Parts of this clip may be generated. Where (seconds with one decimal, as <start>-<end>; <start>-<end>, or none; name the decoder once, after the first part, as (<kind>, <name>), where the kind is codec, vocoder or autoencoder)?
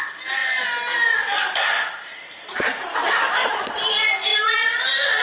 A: 0.4-3.5 (vocoder, BigVGAN v2); 4.3-5.2